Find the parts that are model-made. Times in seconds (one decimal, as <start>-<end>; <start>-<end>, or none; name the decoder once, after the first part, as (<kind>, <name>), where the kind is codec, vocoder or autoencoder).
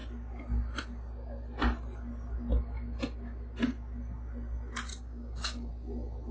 4.9-5.7 (codec, DAC)